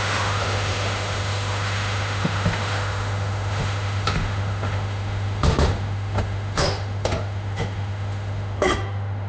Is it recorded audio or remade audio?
remade